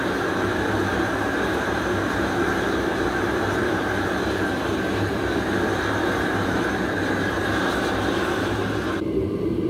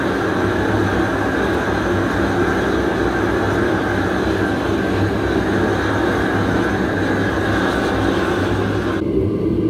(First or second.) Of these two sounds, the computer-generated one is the first